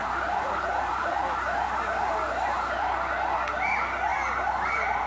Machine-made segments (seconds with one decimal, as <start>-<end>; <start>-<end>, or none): 0.0-3.1; 4.1-5.1